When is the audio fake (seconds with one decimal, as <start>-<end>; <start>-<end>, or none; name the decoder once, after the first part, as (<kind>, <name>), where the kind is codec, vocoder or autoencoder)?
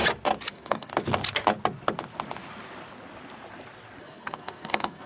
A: 0.5-0.9 (codec, SNAC); 4.0-5.1